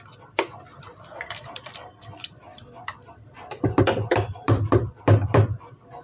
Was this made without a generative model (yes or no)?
no